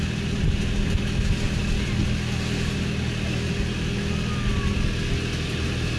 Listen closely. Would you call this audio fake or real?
real